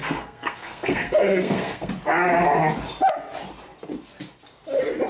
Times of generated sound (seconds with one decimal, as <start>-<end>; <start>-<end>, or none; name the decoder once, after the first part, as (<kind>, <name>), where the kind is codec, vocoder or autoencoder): 0.0-1.9 (codec, SNAC)